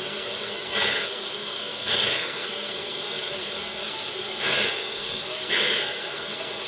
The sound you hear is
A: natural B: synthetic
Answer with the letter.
B